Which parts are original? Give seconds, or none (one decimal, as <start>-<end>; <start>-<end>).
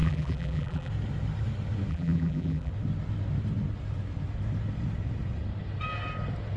0.9-1.9; 2.7-6.6